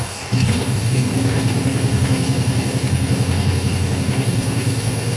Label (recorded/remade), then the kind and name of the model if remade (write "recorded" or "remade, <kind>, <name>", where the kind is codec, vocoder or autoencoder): remade, codec, DAC